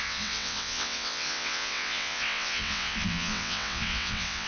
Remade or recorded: remade